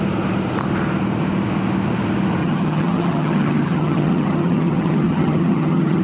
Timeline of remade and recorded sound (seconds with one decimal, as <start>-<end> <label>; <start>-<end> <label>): 0.0-2.4 recorded; 2.4-6.0 remade